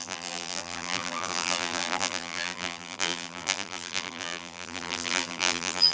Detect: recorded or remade remade